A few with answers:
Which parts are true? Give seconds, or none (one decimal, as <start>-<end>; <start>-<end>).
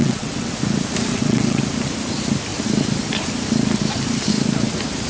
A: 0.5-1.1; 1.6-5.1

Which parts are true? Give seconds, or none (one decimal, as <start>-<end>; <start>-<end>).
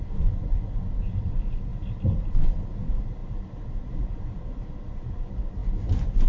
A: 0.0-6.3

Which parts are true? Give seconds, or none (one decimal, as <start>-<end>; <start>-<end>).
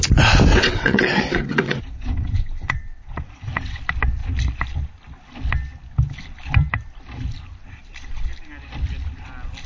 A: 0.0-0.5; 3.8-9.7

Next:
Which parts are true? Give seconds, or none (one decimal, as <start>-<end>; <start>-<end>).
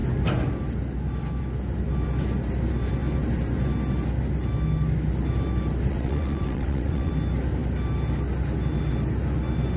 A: 0.0-5.9; 7.1-9.8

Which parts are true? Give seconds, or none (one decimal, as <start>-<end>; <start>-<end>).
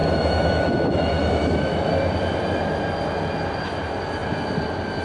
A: 1.9-5.0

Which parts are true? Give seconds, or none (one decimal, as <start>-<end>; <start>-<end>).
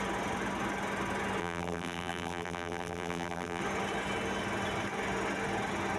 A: 0.0-1.4; 3.6-6.0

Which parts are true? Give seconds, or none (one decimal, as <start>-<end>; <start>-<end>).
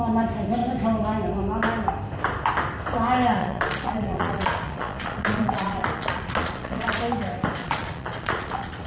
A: 0.0-3.4; 6.9-7.6